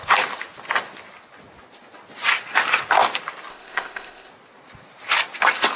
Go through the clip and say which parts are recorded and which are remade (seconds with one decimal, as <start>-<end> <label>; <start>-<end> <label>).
0.0-3.5 recorded; 3.5-4.3 remade; 4.3-5.8 recorded

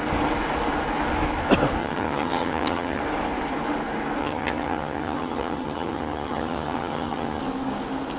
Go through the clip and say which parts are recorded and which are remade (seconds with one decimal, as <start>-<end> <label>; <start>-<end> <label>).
0.0-1.8 recorded; 1.8-3.0 remade; 3.0-4.2 recorded; 4.2-7.4 remade; 7.4-8.2 recorded

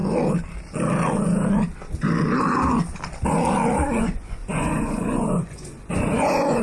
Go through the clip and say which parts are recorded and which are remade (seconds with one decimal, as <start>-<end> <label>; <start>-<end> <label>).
0.0-4.0 recorded; 4.0-6.6 remade

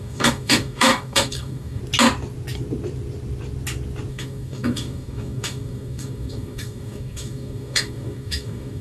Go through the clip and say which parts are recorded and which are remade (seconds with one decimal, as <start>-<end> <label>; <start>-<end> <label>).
0.0-1.8 remade; 1.8-4.1 recorded; 4.1-8.8 remade

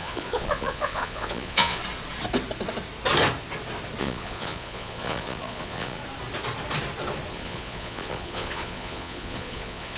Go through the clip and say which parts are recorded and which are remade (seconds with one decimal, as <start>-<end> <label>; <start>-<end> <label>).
0.0-1.8 remade; 1.8-4.0 recorded; 4.0-6.0 remade; 6.0-7.3 recorded; 7.3-10.0 remade

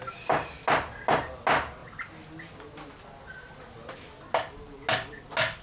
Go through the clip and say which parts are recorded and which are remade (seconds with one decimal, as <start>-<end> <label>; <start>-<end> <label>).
0.0-5.6 recorded